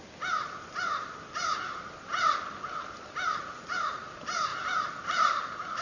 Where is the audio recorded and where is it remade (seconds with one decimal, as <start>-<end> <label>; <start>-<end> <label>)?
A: 0.0-4.5 recorded; 4.5-5.8 remade